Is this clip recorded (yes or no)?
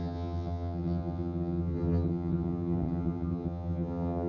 no